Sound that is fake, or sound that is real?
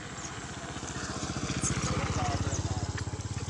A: real